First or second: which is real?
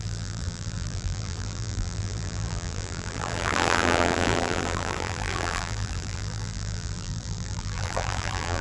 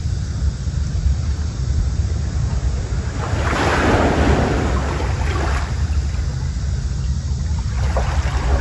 second